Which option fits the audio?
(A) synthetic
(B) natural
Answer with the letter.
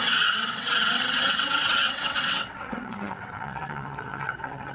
A